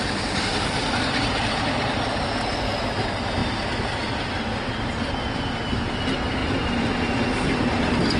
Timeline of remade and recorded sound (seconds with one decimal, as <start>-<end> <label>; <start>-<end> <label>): 0.0-8.2 recorded